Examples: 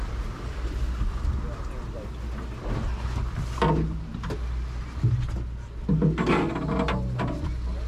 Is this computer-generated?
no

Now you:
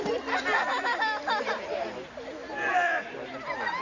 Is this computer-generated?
no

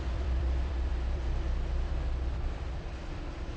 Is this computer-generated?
yes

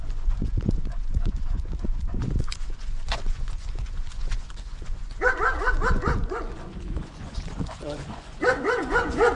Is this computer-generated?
yes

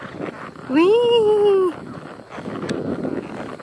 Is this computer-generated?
no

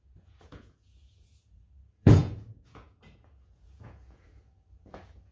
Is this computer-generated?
yes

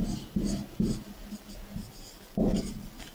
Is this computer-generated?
no